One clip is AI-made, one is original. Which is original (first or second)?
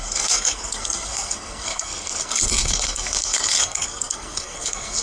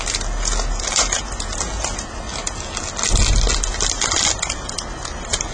second